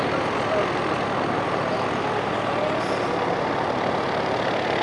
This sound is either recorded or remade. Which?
recorded